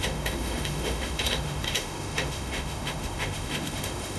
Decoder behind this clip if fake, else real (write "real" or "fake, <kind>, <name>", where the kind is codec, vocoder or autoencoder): fake, autoencoder, DAC-VAE